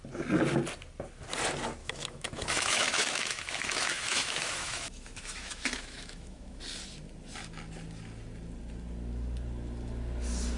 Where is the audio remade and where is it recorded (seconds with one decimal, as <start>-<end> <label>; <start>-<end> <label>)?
0.0-1.8 recorded; 1.8-6.6 remade; 6.6-10.6 recorded